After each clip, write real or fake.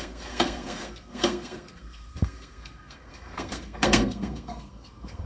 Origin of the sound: fake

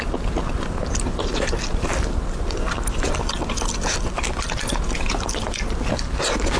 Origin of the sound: real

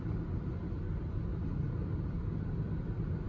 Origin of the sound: real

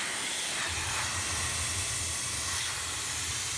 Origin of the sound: real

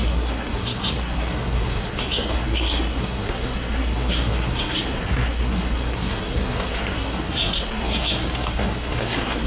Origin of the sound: fake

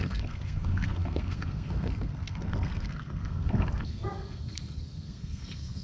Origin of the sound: fake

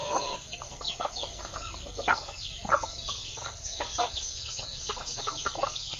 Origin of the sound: fake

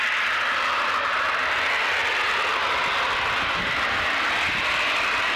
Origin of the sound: real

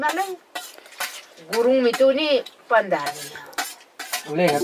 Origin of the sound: real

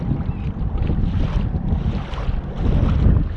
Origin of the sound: real